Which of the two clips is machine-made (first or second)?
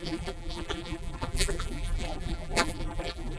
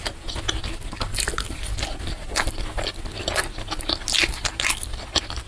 first